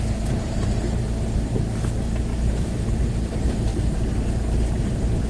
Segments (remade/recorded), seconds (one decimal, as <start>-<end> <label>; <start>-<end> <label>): 0.0-3.7 remade; 3.7-4.8 recorded; 4.8-5.3 remade